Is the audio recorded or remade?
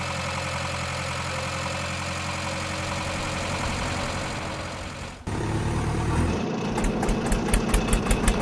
recorded